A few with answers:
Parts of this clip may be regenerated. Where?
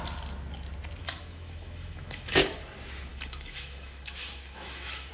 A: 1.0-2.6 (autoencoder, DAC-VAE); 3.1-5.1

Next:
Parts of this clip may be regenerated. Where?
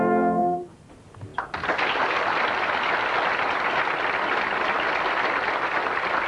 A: 0.4-0.9 (vocoder, BigVGAN v2)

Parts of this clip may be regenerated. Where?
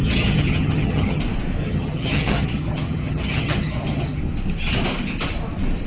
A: 0.0-1.2 (vocoder, HiFi-GAN); 1.6-4.2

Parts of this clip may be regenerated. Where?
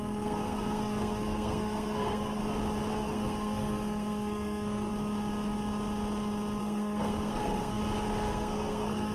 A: 0.0-2.4 (codec, SNAC); 2.9-4.9; 6.6-7.8; 8.3-9.1